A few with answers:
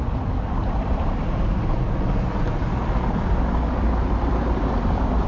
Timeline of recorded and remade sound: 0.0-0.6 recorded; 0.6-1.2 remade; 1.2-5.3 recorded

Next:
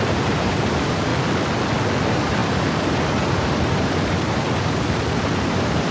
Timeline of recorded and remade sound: 0.0-1.1 remade; 1.1-2.0 recorded; 2.0-5.9 remade

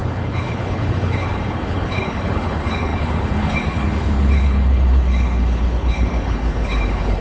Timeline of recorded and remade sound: 0.0-7.2 remade